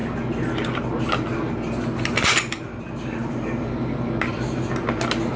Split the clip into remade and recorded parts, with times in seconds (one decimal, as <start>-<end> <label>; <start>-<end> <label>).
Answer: 0.0-5.4 recorded